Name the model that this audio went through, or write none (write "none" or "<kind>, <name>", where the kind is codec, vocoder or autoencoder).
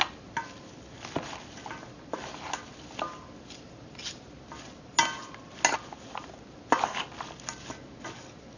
none